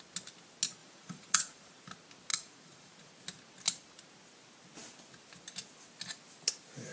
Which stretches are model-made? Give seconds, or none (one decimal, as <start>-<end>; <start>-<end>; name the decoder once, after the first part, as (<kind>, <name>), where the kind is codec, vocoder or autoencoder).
0.8-1.8 (vocoder, Vocos); 2.3-3.1